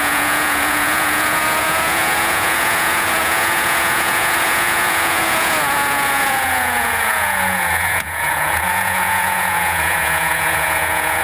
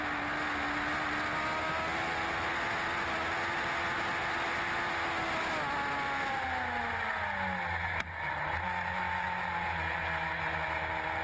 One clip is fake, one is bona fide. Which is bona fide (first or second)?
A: second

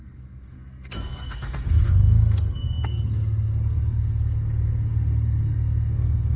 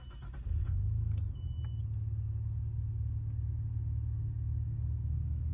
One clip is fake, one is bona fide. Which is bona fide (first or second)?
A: second